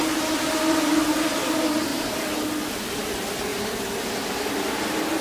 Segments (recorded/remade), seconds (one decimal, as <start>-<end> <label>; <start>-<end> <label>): 0.0-1.9 remade; 1.9-2.7 recorded; 2.7-5.2 remade